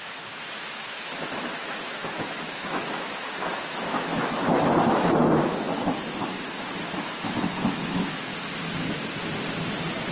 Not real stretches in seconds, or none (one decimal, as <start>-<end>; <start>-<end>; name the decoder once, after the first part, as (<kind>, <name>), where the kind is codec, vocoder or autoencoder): 0.0-8.3 (autoencoder, DAC-VAE)